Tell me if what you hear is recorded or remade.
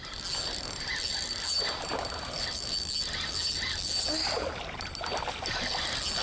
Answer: recorded